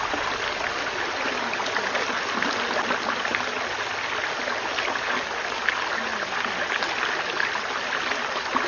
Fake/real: real